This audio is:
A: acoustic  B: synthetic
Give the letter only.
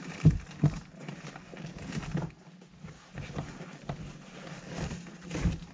A